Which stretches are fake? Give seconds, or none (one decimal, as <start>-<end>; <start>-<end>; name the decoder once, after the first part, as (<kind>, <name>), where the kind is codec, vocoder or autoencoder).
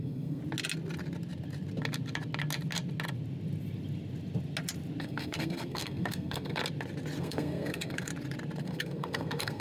0.0-0.4 (codec, SNAC); 5.0-6.6; 7.2-8.1; 8.6-9.6